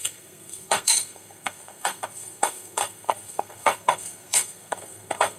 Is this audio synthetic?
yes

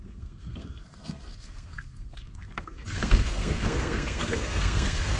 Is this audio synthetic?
yes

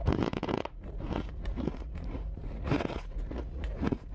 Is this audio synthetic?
yes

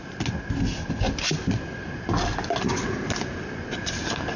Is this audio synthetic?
no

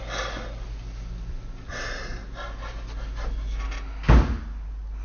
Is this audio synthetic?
no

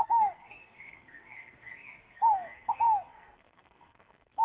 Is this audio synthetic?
yes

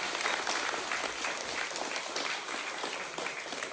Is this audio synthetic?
no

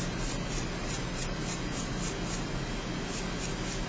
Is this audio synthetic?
no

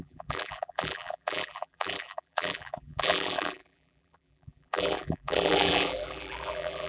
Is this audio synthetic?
yes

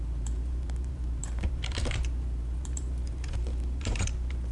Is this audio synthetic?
yes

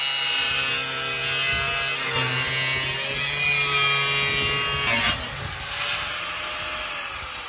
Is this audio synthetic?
no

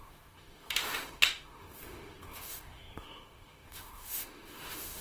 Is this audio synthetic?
yes